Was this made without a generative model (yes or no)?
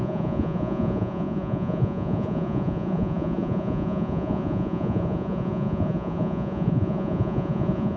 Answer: no